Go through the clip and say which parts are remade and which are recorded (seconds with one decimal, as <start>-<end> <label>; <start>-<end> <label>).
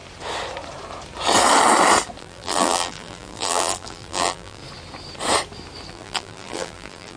0.0-2.2 recorded; 2.2-4.6 remade; 4.6-5.9 recorded; 5.9-7.2 remade